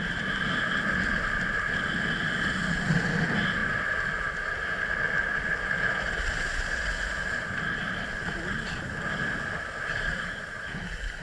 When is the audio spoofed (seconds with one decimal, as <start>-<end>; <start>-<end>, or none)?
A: none